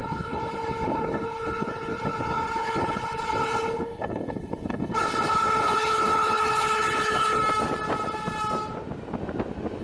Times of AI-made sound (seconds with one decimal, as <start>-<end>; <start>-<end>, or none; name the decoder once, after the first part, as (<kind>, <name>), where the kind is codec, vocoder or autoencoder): 0.0-7.4 (codec, HILCodec)